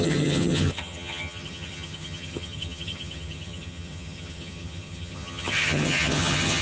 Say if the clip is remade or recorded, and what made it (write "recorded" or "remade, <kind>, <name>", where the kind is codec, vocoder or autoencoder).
remade, vocoder, HiFi-GAN